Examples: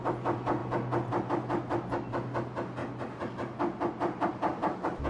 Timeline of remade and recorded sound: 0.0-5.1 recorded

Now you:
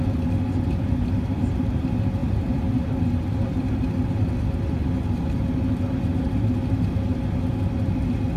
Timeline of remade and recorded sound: 0.0-2.2 recorded; 2.2-2.8 remade; 2.8-8.4 recorded